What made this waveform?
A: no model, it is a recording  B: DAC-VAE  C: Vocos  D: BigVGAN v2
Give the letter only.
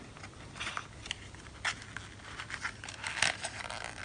A